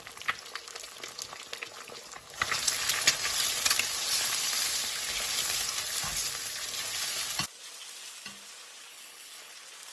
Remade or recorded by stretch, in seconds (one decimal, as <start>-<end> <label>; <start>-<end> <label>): 0.0-8.9 recorded; 8.9-9.5 remade; 9.5-9.9 recorded